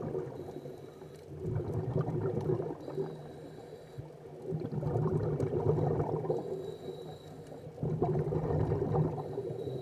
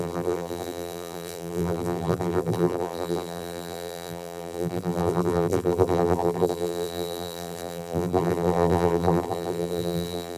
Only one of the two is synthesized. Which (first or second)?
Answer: second